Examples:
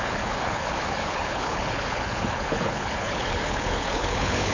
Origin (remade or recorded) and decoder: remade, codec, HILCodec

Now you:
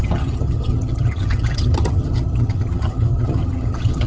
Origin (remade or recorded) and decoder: remade, vocoder, HiFi-GAN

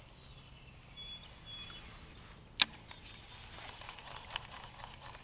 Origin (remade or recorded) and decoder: recorded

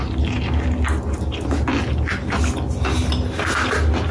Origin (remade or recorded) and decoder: recorded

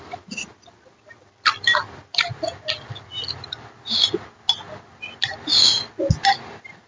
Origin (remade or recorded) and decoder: recorded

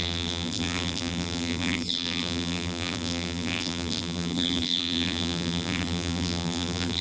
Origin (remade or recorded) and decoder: remade, vocoder, BigVGAN v2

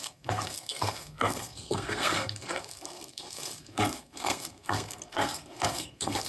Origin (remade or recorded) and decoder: remade, codec, SNAC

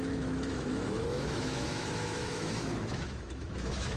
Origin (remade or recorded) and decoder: remade, autoencoder, DAC-VAE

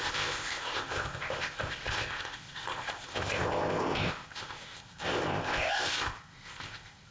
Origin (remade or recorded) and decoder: remade, codec, ZipCodec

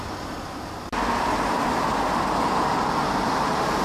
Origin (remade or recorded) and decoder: recorded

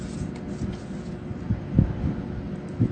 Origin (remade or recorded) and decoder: recorded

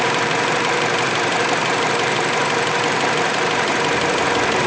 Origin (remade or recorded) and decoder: remade, vocoder, BigVGAN v2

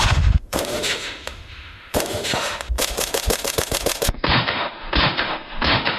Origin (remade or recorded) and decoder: remade, autoencoder, DAC-VAE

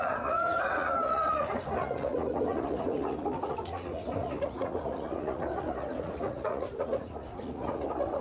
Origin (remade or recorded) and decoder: remade, vocoder, Vocos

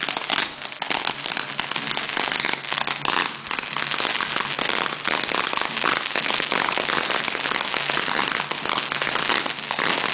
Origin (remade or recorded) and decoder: recorded